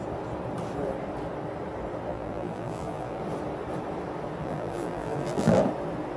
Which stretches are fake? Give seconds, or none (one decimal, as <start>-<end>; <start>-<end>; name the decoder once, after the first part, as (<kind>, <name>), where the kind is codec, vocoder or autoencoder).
2.1-3.2 (vocoder, BigVGAN v2); 4.4-5.6